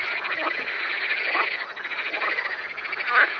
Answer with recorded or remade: recorded